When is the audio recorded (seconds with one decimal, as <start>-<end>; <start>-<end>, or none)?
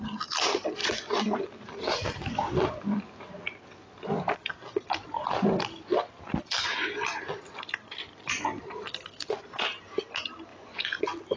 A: 0.0-0.8; 1.4-10.5; 11.0-11.4